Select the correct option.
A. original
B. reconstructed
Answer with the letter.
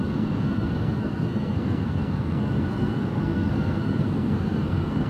B